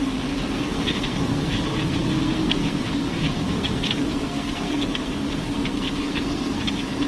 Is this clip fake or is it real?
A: fake